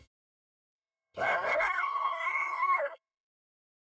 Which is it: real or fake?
fake